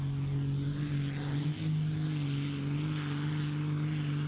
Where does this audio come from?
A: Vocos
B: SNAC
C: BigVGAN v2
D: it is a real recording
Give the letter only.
D